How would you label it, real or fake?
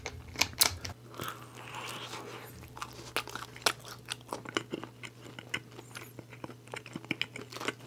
real